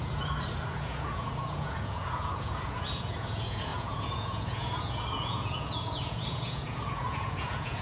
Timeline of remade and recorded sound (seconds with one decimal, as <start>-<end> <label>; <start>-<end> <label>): 0.0-7.8 remade